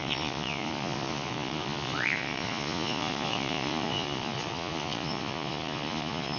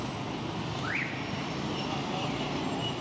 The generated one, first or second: first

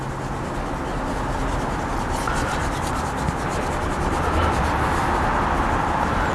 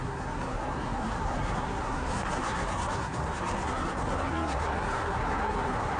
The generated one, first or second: second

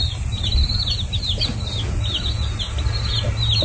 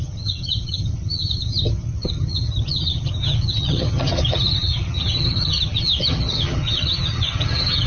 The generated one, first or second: second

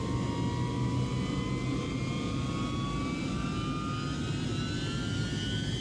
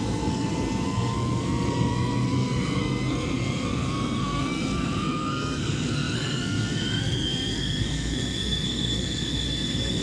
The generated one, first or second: second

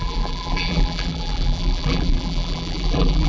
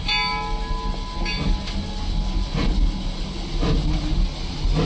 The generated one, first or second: first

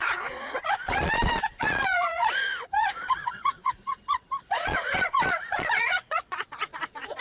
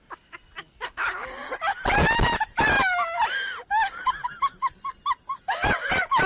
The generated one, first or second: first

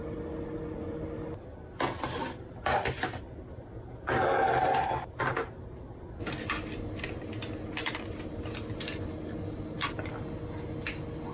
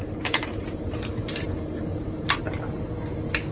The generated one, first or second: second